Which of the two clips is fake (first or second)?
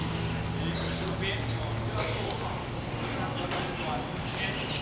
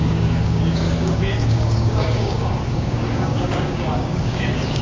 second